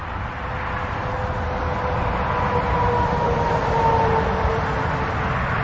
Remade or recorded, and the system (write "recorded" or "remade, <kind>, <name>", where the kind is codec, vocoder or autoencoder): recorded